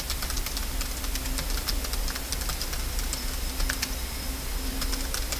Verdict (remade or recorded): recorded